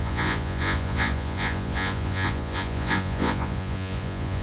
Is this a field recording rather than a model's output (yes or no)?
no